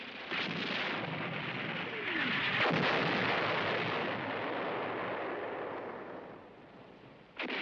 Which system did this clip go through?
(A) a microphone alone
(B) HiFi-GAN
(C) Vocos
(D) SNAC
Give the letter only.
A